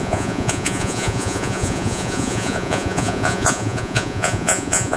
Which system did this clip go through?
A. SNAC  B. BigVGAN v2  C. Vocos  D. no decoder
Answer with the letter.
C